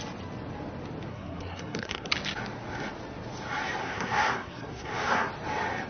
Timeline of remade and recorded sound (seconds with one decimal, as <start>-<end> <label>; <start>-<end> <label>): 0.0-1.1 recorded; 1.1-2.1 remade; 2.1-3.8 recorded; 3.8-5.3 remade; 5.3-5.9 recorded